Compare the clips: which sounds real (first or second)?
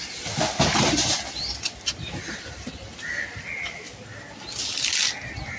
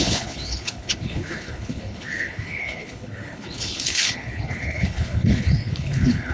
first